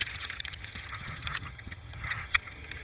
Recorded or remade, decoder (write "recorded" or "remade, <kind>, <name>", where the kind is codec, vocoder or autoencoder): remade, vocoder, HiFi-GAN